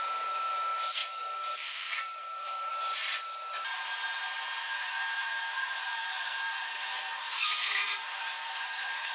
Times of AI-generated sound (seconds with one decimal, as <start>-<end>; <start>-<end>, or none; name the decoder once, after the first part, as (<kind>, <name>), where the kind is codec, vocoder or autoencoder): 0.0-2.7 (codec, SNAC); 4.6-9.1

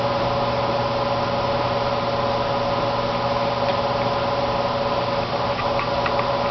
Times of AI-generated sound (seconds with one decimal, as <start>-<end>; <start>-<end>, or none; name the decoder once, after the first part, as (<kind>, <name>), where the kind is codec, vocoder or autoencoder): none

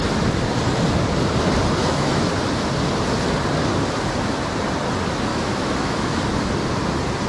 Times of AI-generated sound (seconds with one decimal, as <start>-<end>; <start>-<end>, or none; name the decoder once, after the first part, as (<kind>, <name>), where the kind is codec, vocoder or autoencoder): 1.8-2.3 (autoencoder, DAC-VAE); 5.3-6.2

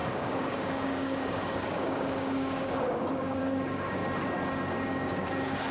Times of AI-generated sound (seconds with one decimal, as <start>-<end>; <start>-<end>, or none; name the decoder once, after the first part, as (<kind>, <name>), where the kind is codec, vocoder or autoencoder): 0.0-4.0 (codec, DAC); 4.7-5.7

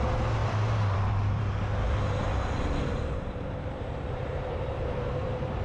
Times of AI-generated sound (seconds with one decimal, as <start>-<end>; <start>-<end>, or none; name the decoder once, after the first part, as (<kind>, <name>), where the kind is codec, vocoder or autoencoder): 0.4-1.4 (vocoder, BigVGAN v2); 2.3-5.6

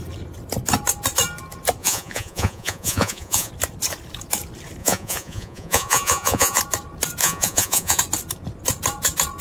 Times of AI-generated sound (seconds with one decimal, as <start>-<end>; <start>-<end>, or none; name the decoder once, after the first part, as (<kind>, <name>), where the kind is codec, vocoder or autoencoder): 1.8-3.5 (vocoder, Vocos); 4.8-6.6; 7.2-8.0

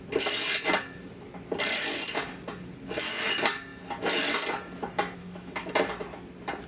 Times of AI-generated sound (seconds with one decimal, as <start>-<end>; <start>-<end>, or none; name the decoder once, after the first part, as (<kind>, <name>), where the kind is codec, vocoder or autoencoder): 5.2-5.7 (autoencoder, DAC-VAE)